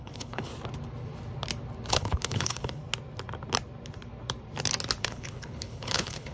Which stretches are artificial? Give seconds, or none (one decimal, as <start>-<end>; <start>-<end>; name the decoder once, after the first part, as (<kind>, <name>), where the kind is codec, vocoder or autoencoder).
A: 0.0-0.5 (codec, HILCodec); 1.9-2.8; 5.0-6.3